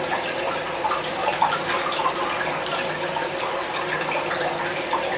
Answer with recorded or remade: recorded